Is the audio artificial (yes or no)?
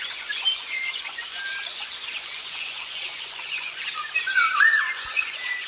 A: yes